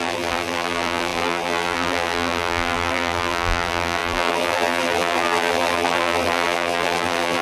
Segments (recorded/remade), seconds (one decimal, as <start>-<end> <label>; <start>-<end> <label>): 0.0-7.4 remade